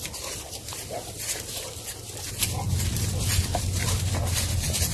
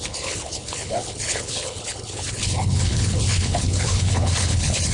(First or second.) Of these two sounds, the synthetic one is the second